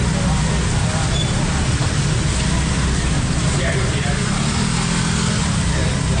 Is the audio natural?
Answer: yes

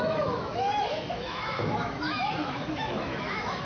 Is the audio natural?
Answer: no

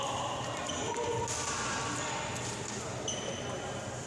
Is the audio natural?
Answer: yes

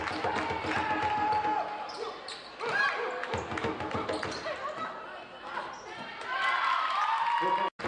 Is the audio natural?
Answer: yes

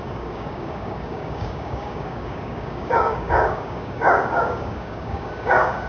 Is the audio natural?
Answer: no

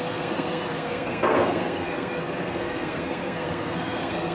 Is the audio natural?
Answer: no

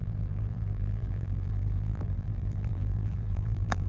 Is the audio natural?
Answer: no